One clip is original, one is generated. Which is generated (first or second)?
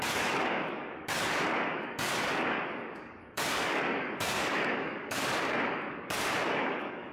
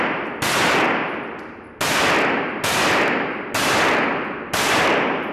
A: first